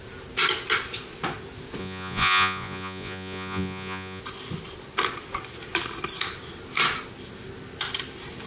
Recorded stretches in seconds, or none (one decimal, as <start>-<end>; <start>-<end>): 0.0-1.8; 4.2-8.5